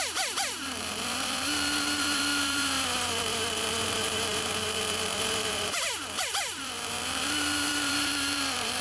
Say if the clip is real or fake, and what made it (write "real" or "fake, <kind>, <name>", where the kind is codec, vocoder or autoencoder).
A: fake, vocoder, BigVGAN v2